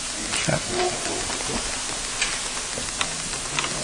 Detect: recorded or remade recorded